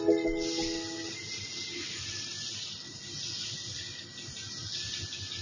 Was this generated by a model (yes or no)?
no